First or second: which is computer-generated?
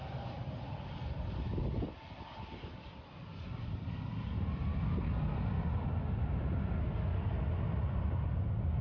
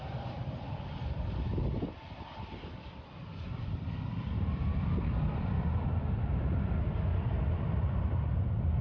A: second